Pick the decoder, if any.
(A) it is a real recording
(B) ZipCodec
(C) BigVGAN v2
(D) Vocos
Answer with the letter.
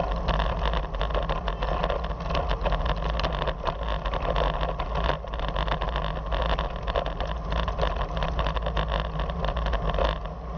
A